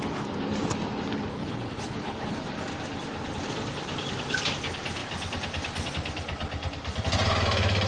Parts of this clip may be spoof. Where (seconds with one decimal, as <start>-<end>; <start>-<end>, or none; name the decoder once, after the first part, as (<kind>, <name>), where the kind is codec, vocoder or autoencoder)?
1.3-2.4 (codec, HILCodec)